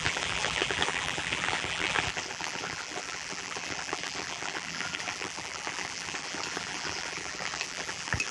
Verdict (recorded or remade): remade